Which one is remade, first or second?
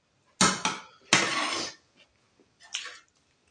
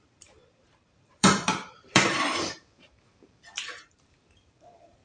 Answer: second